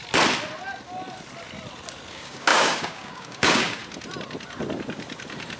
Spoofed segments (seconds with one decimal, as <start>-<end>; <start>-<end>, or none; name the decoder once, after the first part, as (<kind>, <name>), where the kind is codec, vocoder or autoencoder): 2.1-3.8 (codec, DAC)